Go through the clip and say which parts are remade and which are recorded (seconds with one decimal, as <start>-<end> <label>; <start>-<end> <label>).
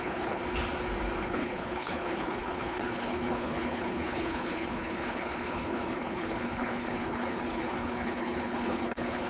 0.0-0.4 remade; 0.4-1.2 recorded; 1.2-9.3 remade